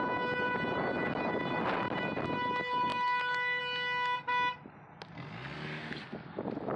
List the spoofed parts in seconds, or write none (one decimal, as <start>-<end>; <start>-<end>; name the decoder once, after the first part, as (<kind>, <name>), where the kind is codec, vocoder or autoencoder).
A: none